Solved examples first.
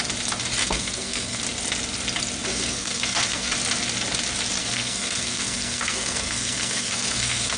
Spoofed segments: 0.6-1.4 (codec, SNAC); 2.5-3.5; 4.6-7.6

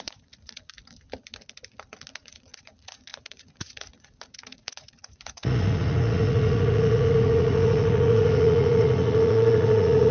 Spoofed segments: 0.0-0.8 (vocoder, Vocos); 2.2-10.1

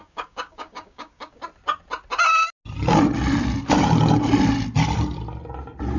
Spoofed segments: 0.0-1.4 (codec, DAC)

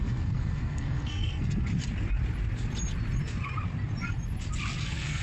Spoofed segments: 0.0-1.7 (codec, SNAC); 4.8-5.2